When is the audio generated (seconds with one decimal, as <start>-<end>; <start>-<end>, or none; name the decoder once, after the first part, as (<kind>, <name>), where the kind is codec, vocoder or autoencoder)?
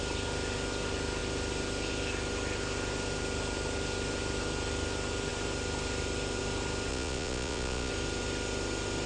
6.9-7.9 (vocoder, Vocos)